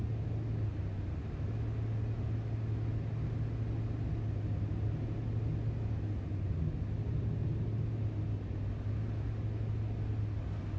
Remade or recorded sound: recorded